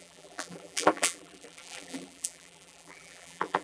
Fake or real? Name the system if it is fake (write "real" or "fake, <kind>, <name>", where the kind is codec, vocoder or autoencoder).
fake, vocoder, BigVGAN v2